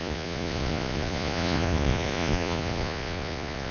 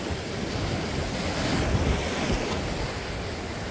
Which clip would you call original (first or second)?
second